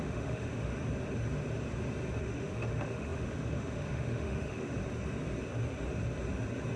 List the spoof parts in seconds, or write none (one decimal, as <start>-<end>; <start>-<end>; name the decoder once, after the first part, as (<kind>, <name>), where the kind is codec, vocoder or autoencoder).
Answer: 0.0-0.8 (autoencoder, DAC-VAE); 2.2-4.8